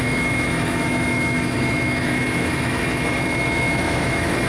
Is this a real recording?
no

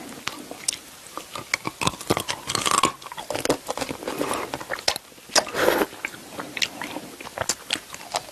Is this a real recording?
yes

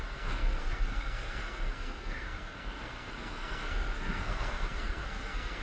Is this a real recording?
no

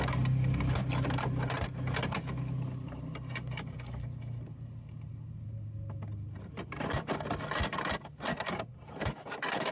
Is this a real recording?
yes